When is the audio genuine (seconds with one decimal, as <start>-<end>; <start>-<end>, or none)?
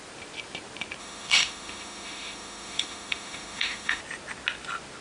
0.0-1.0; 4.0-5.0